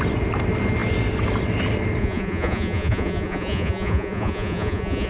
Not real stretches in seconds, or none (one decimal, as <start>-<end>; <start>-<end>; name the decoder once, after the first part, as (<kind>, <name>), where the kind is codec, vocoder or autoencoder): 2.0-5.1 (vocoder, Vocos)